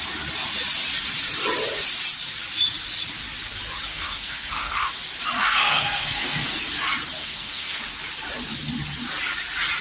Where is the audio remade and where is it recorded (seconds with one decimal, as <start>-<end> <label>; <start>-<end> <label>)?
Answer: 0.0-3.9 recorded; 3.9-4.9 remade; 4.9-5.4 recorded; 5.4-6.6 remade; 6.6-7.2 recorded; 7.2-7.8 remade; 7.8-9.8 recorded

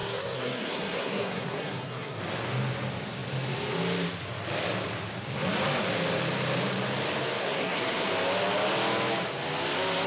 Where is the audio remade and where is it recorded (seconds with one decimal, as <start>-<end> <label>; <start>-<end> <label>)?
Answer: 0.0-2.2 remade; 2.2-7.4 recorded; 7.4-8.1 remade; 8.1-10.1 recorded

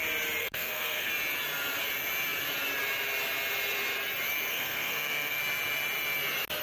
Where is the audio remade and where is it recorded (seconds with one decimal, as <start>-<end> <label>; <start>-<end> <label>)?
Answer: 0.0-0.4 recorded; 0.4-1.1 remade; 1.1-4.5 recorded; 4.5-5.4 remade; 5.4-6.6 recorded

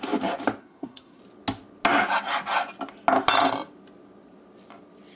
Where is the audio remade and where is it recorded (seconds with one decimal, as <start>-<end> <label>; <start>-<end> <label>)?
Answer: 0.0-0.6 recorded; 0.6-1.2 remade; 1.2-5.2 recorded

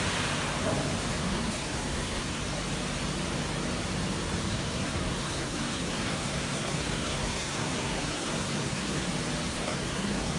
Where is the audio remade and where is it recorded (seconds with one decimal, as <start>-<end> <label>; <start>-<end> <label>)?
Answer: 0.0-1.1 recorded; 1.1-2.4 remade; 2.4-4.5 recorded; 4.5-9.1 remade; 9.1-9.5 recorded; 9.5-10.4 remade